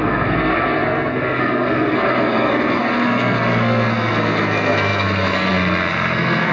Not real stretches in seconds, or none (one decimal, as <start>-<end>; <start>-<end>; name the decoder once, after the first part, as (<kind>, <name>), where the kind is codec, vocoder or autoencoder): 0.0-6.5 (codec, SNAC)